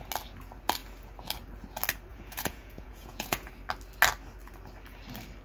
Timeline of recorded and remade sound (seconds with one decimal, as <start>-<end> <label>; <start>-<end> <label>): 0.0-2.1 recorded; 2.1-3.5 remade; 3.5-5.4 recorded

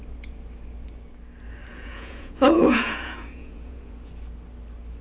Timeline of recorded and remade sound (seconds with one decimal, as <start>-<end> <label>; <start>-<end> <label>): 0.0-1.7 recorded; 1.7-4.1 remade; 4.1-5.0 recorded

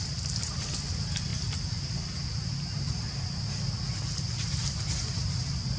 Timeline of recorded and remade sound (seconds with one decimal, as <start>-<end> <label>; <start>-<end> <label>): 0.0-5.8 recorded

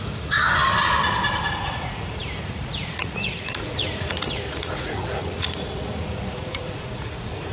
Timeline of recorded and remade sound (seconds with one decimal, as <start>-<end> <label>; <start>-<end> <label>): 0.0-0.4 remade; 0.4-1.5 recorded; 1.5-7.5 remade

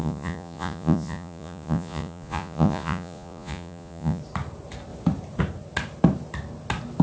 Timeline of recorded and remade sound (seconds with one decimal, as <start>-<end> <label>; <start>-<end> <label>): 0.0-4.2 remade; 4.2-7.0 recorded

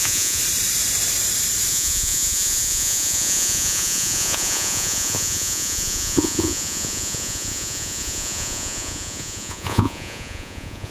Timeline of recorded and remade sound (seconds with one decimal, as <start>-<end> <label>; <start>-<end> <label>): 0.0-0.4 remade; 0.4-1.7 recorded; 1.7-10.9 remade

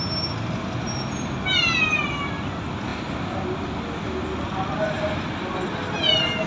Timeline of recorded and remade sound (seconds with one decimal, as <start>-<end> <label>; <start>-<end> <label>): 0.0-6.5 recorded